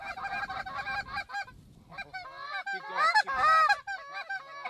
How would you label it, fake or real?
real